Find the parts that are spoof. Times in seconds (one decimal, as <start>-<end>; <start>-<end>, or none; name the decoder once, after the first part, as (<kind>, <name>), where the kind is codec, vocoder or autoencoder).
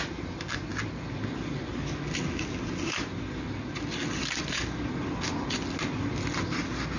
none